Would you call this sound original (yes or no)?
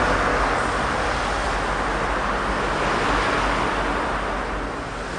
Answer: yes